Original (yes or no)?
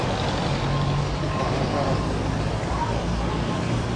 yes